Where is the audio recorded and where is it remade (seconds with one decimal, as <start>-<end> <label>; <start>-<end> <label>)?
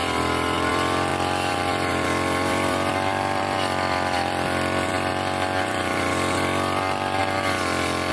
0.0-7.2 remade; 7.2-8.1 recorded